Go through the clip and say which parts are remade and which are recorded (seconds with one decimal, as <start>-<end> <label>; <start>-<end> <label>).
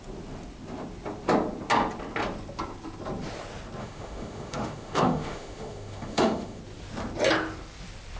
0.0-3.8 recorded; 3.8-6.6 remade; 6.6-8.2 recorded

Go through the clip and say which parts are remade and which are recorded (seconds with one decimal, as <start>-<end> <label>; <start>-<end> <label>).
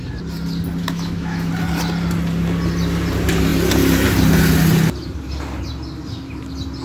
0.0-0.8 recorded; 0.8-1.5 remade; 1.5-6.8 recorded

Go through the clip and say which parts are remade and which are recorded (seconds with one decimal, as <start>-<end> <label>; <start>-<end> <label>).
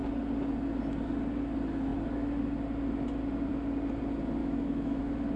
0.0-4.4 recorded; 4.4-5.0 remade; 5.0-5.4 recorded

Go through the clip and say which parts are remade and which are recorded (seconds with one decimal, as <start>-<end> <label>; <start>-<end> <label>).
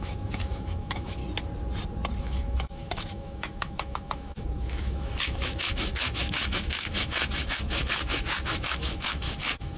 0.0-1.2 remade; 1.2-2.2 recorded; 2.2-9.8 remade